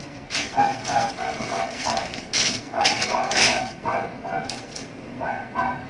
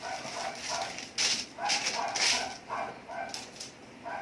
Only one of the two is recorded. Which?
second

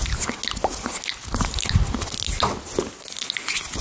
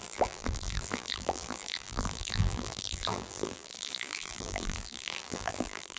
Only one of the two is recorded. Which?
first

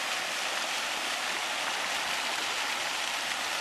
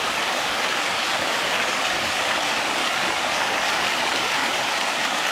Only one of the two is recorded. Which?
first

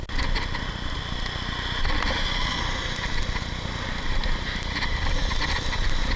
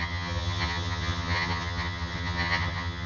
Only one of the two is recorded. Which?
first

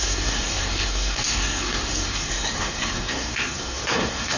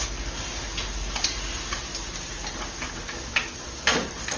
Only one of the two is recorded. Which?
second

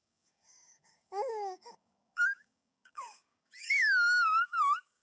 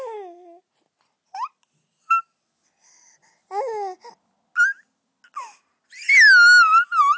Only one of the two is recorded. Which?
second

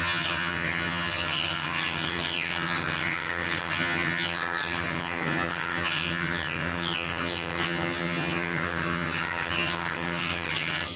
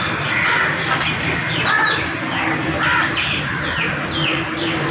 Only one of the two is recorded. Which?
second